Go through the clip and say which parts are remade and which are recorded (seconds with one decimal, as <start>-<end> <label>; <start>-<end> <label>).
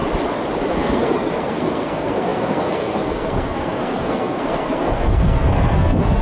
0.0-0.7 recorded; 0.7-6.2 remade